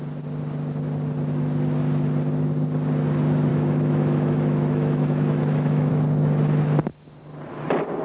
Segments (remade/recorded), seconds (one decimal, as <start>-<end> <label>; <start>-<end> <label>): 0.0-3.5 recorded; 3.5-5.9 remade; 5.9-8.0 recorded